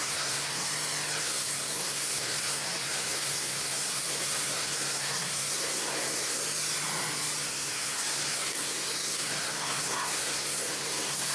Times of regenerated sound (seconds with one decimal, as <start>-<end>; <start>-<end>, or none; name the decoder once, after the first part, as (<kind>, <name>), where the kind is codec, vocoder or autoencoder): 0.0-0.7 (codec, SNAC); 1.2-6.4; 7.4-11.3

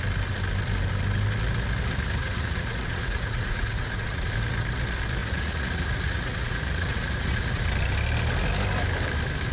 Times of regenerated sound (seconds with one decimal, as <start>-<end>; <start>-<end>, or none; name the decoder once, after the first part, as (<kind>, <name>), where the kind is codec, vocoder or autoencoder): 2.2-4.3 (vocoder, Vocos); 5.2-7.6